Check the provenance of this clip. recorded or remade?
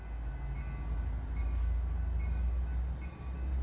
recorded